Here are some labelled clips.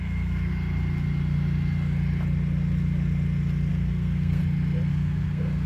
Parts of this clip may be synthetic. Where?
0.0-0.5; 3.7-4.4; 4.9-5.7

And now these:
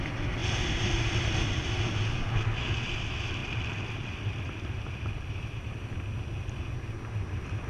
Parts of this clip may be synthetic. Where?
0.4-1.7; 3.4-5.7